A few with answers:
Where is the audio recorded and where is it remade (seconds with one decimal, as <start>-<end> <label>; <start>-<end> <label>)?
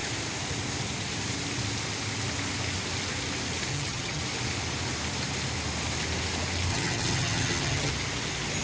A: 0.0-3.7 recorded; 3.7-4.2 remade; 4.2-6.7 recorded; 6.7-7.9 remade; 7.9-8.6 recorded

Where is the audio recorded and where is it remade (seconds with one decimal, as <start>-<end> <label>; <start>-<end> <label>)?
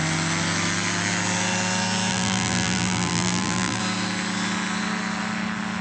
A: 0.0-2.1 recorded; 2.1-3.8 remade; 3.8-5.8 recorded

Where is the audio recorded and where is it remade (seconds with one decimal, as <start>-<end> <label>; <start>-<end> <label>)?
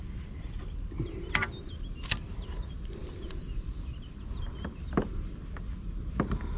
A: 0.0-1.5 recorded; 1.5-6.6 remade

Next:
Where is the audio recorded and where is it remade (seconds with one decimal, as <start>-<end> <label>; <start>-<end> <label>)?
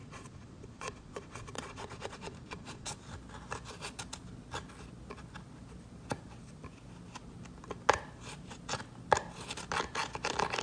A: 0.0-3.0 remade; 3.0-10.6 recorded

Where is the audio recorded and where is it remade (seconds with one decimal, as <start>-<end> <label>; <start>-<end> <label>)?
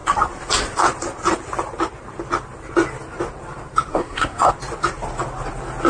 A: 0.0-3.9 recorded; 3.9-4.5 remade; 4.5-5.9 recorded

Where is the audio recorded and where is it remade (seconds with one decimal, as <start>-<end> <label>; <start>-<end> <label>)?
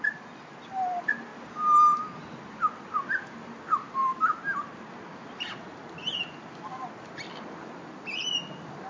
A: 0.0-4.0 recorded; 4.0-4.8 remade; 4.8-8.9 recorded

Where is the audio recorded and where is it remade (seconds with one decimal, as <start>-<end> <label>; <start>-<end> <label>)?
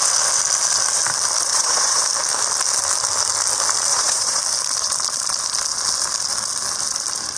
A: 0.0-1.5 recorded; 1.5-2.0 remade; 2.0-3.9 recorded; 3.9-4.4 remade; 4.4-7.4 recorded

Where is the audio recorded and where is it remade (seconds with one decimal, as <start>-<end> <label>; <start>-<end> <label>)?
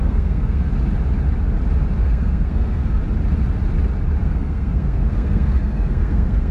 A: 0.0-0.7 remade; 0.7-2.0 recorded; 2.0-3.0 remade; 3.0-4.2 recorded; 4.2-6.5 remade